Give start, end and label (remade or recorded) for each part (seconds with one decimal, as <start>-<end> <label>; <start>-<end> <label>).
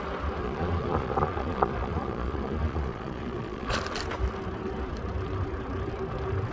0.0-0.4 recorded; 0.4-3.8 remade; 3.8-6.5 recorded